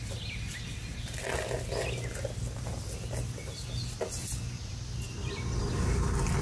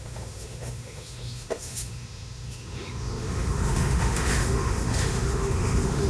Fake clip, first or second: second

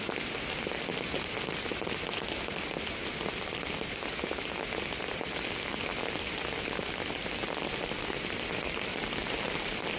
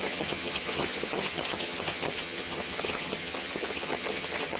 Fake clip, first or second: second